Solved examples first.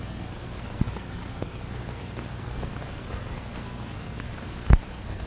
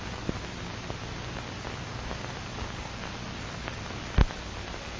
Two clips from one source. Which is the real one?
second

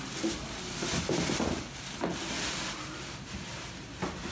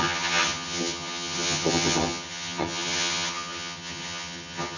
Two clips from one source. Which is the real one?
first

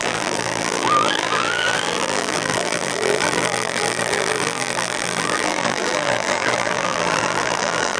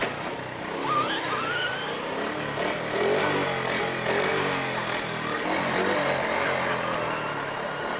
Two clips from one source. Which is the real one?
second